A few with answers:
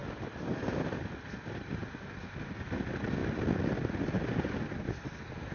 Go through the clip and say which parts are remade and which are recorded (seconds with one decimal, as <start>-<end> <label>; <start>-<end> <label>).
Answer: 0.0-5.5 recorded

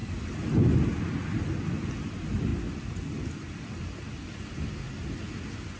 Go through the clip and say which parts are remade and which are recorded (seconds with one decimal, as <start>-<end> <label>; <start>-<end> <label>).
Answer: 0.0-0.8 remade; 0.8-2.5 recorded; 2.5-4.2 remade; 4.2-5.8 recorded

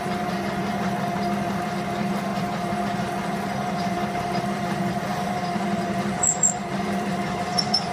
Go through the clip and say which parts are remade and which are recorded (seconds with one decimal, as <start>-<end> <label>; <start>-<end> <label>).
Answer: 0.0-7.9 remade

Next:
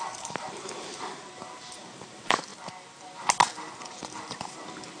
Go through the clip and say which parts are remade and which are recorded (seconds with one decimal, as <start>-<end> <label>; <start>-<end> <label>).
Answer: 0.0-2.5 remade; 2.5-3.8 recorded; 3.8-5.0 remade

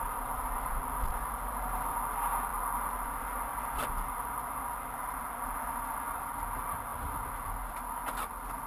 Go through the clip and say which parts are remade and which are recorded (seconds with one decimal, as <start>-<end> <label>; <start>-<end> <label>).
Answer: 0.0-8.7 recorded

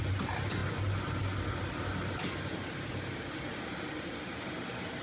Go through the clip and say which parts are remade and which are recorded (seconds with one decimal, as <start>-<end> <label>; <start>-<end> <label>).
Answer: 0.0-0.6 remade; 0.6-1.8 recorded; 1.8-5.0 remade